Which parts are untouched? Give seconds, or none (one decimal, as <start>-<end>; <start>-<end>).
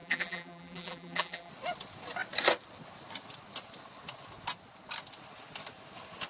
1.5-6.3